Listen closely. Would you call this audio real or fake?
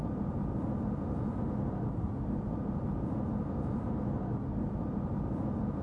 real